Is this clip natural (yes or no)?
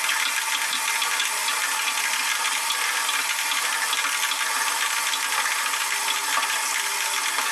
yes